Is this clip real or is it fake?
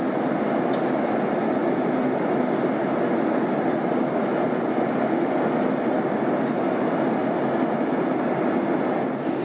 real